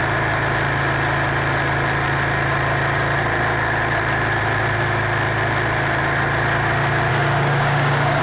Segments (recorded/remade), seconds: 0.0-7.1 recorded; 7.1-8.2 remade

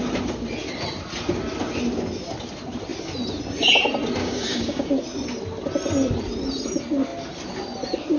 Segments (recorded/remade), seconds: 0.0-4.2 recorded; 4.2-4.9 remade; 4.9-8.2 recorded

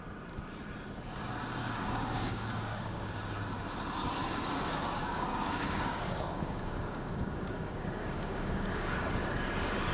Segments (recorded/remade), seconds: 0.0-1.6 recorded; 1.6-3.1 remade; 3.1-5.0 recorded; 5.0-9.1 remade; 9.1-9.9 recorded

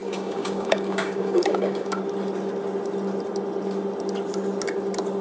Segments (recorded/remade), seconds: 0.0-2.0 remade; 2.0-5.2 recorded

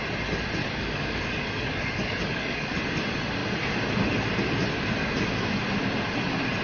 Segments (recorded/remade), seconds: 0.0-0.6 recorded; 0.6-2.8 remade; 2.8-6.6 recorded

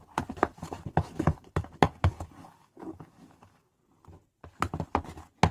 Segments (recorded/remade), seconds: 0.0-0.4 recorded; 0.4-3.7 remade; 3.7-5.5 recorded